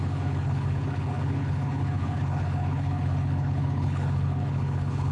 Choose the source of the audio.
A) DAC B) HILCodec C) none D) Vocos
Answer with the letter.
B